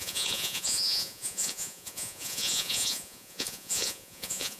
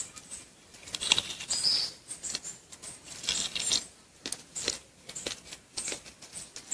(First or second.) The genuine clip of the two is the second